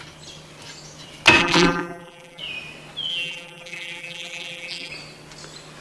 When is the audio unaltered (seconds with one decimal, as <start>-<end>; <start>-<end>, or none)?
0.0-1.4; 2.4-3.1; 4.9-5.8